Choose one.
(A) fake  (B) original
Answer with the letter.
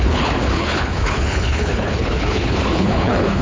A